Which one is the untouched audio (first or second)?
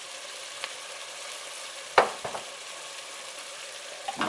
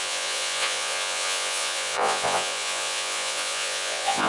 first